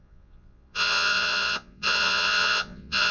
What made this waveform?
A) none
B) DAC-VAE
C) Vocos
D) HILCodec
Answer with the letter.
C